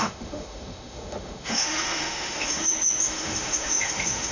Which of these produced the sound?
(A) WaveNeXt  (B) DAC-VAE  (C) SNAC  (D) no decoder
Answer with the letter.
B